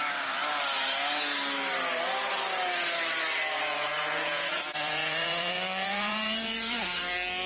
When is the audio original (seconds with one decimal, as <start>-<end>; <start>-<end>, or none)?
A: 0.0-3.7; 7.0-7.5

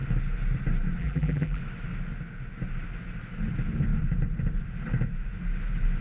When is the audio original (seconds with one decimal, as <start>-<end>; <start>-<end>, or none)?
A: 0.0-1.0; 1.6-6.0

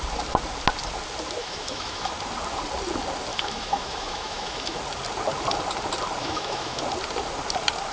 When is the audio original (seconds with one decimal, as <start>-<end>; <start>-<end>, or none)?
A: 0.0-1.4; 2.1-3.3; 4.8-6.2; 6.8-7.9

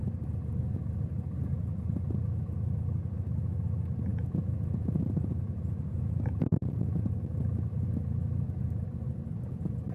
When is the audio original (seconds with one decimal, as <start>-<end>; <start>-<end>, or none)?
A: 0.0-4.1; 7.1-9.9

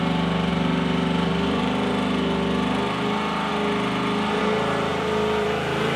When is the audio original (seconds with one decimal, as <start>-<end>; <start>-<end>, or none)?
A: 0.0-0.5; 1.9-4.9

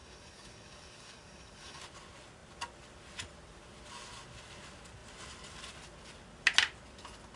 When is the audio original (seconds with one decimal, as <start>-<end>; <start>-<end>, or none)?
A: 1.8-7.4

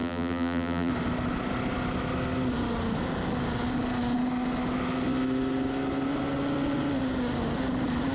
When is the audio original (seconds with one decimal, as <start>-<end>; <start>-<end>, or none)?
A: 0.9-8.1

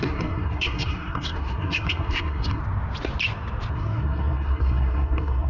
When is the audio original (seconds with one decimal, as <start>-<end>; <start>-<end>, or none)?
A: 2.6-3.7